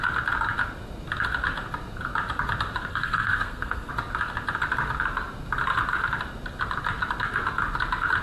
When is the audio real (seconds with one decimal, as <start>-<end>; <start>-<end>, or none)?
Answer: 0.0-2.9; 3.9-8.2